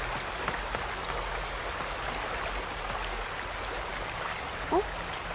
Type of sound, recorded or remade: recorded